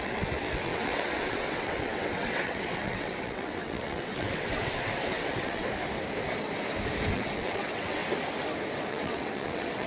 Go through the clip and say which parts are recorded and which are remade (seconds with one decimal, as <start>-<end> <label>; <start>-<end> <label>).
0.0-5.6 remade; 5.6-7.1 recorded; 7.1-8.0 remade; 8.0-8.9 recorded; 8.9-9.9 remade